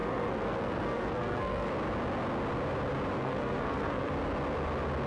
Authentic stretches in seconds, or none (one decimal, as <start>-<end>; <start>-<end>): 1.7-3.2; 4.1-5.1